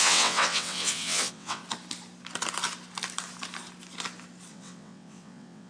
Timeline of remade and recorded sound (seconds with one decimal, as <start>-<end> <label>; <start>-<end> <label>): 0.0-1.6 remade; 1.6-4.5 recorded; 4.5-5.7 remade